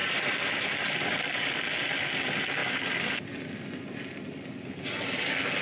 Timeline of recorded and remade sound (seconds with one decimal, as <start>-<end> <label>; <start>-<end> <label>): 0.0-5.6 recorded